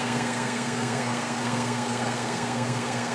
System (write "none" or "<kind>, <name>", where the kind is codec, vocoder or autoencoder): codec, SNAC